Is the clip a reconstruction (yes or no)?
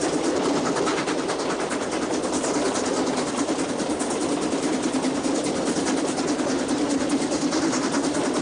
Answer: no